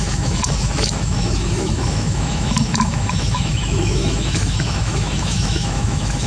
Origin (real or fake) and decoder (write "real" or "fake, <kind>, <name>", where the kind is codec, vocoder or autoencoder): fake, autoencoder, DAC-VAE